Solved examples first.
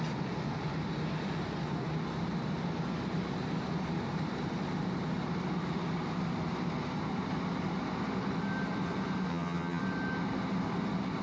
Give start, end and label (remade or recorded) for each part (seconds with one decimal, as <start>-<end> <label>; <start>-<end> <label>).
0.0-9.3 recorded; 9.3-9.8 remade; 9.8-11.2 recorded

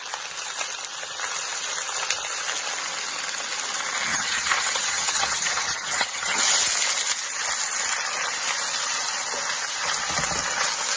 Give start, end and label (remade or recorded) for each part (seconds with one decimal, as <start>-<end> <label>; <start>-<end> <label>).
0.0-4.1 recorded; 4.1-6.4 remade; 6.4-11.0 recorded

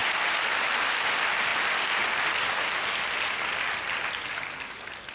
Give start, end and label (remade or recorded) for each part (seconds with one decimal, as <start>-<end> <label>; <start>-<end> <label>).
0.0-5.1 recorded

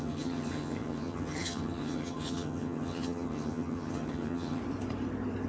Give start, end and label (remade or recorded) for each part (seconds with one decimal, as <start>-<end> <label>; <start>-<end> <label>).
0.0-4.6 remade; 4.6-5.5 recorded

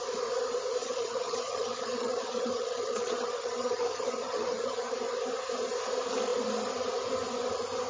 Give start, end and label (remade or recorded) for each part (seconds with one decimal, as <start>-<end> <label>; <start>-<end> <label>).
0.0-0.8 recorded; 0.8-4.9 remade; 4.9-7.9 recorded